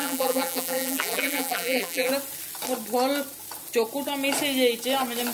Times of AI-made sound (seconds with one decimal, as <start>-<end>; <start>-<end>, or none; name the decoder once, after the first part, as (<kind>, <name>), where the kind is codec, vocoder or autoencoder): 0.0-2.1 (vocoder, BigVGAN v2)